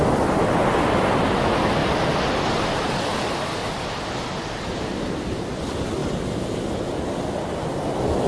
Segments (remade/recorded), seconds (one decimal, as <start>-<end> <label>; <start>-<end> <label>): 0.0-1.8 recorded; 1.8-2.8 remade; 2.8-3.6 recorded; 3.6-4.7 remade; 4.7-8.3 recorded